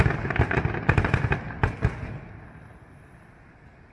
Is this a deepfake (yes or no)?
no